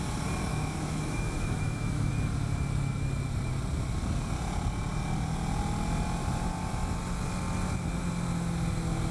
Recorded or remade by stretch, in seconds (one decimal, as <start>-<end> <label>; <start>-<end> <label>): 0.0-0.5 recorded; 0.5-2.1 remade; 2.1-9.1 recorded